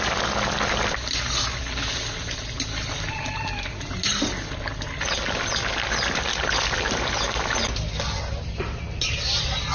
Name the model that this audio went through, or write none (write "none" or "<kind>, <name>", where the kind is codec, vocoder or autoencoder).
none